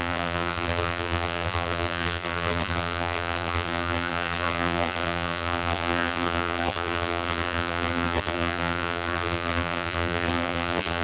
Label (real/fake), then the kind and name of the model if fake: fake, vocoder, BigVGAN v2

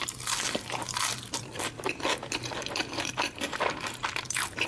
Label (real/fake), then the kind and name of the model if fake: fake, vocoder, BigVGAN v2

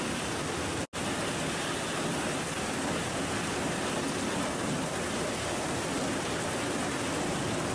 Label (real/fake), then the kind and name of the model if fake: real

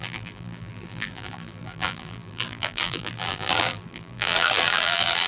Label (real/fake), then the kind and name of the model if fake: fake, vocoder, BigVGAN v2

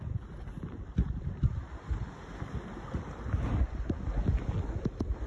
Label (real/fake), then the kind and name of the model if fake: real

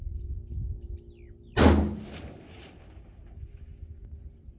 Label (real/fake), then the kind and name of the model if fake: real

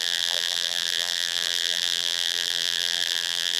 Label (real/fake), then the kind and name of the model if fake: fake, vocoder, BigVGAN v2